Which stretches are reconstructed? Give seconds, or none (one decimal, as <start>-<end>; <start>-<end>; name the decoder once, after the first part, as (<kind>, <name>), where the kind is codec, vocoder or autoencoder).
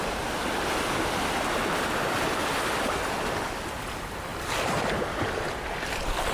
2.4-3.1 (vocoder, BigVGAN v2); 4.3-5.0